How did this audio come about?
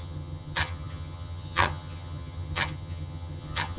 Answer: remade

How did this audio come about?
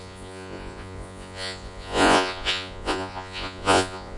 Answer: remade